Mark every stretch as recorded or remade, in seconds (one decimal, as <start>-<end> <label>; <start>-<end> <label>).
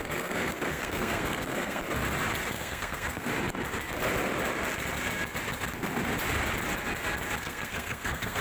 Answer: 0.0-1.8 remade; 1.8-2.5 recorded; 2.5-3.3 remade; 3.3-7.4 recorded; 7.4-8.4 remade